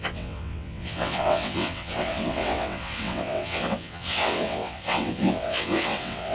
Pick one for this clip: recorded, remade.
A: remade